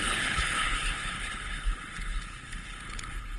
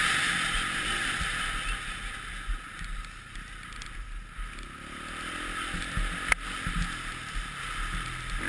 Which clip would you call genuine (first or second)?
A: second